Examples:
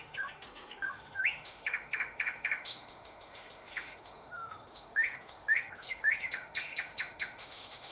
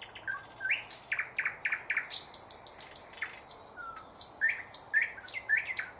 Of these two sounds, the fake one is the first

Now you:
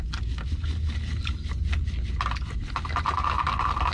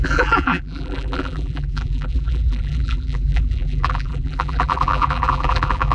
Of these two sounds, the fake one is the second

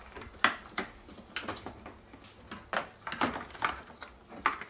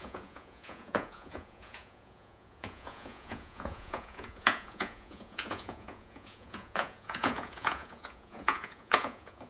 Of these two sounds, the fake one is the second